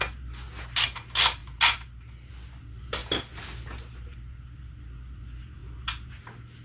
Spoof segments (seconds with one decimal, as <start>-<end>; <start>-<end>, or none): none